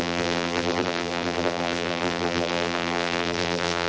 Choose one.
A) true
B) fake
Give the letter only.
B